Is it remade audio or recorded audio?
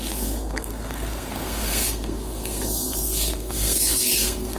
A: remade